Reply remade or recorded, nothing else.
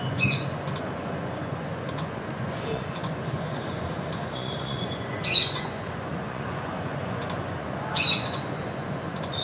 remade